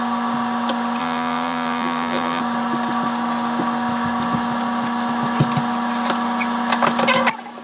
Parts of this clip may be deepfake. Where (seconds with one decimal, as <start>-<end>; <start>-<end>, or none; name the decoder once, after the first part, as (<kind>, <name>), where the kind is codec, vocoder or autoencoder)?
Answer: 1.0-2.4 (vocoder, BigVGAN v2)